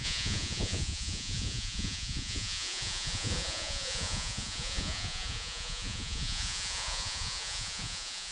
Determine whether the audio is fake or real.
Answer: fake